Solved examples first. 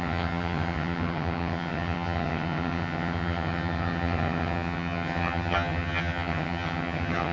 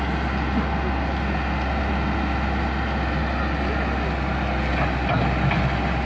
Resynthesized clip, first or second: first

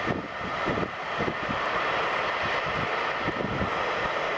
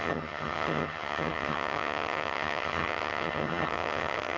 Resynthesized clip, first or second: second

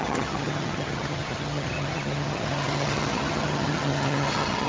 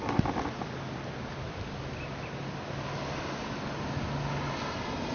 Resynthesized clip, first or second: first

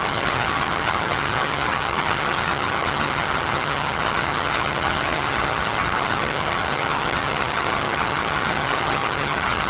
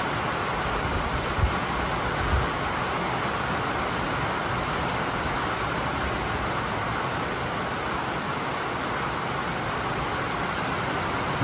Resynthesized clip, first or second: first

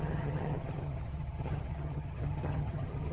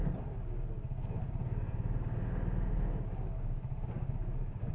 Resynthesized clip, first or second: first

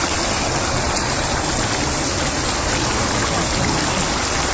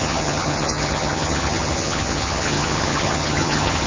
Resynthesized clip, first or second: second